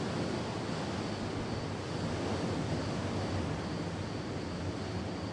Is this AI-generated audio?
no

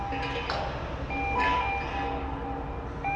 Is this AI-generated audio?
no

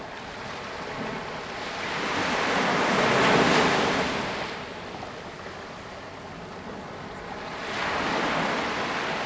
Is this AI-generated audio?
no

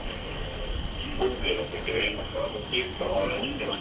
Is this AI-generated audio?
yes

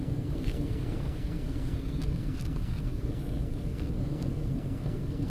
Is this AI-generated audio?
yes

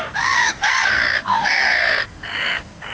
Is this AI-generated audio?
yes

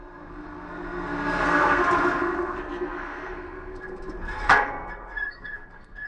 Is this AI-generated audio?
yes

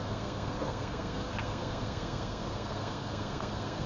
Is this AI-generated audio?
yes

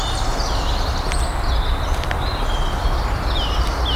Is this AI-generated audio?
no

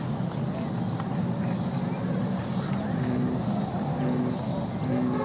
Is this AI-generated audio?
no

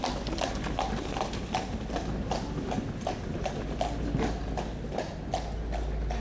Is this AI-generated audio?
no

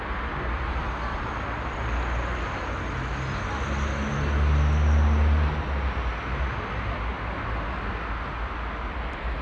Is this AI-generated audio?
no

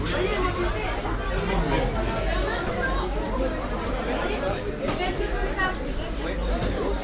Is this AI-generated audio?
no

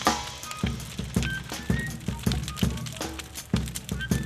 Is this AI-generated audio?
no